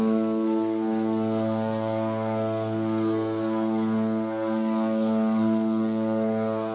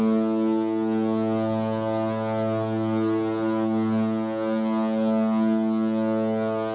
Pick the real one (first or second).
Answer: second